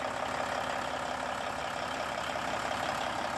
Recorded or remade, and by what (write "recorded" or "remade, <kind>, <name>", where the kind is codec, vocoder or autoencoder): recorded